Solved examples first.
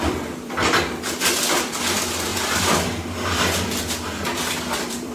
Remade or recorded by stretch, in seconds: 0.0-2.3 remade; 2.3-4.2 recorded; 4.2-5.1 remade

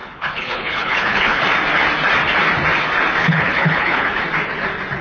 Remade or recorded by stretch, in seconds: 0.0-1.4 remade; 1.4-3.2 recorded; 3.2-4.2 remade; 4.2-5.0 recorded

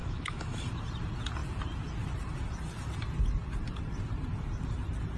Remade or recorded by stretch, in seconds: 0.0-0.7 remade; 0.7-5.2 recorded

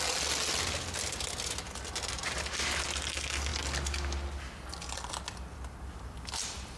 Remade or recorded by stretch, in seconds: 0.0-6.8 recorded

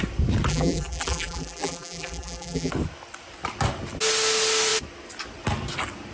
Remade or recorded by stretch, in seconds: 0.0-0.5 recorded; 0.5-2.7 remade; 2.7-6.1 recorded

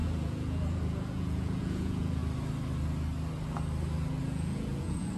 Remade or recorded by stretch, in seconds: 0.0-2.2 remade; 2.2-4.2 recorded; 4.2-5.2 remade

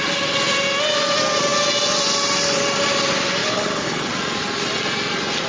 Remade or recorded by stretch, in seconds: 0.0-3.4 recorded; 3.4-4.1 remade; 4.1-5.5 recorded